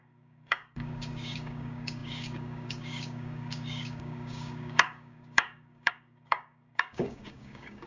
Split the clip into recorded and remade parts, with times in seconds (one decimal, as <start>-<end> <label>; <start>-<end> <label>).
0.0-7.9 remade